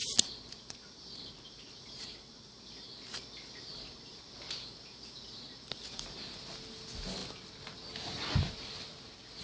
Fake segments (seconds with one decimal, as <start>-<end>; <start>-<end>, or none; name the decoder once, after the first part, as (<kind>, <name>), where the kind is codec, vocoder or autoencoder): 0.0-2.6 (vocoder, BigVGAN v2); 3.7-4.2